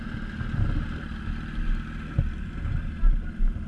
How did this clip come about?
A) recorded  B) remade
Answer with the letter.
A